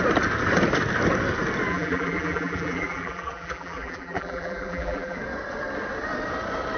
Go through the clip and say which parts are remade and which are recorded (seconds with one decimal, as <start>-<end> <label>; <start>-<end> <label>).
0.0-1.7 recorded; 1.7-5.2 remade; 5.2-6.8 recorded